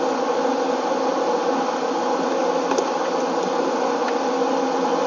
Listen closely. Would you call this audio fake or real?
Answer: real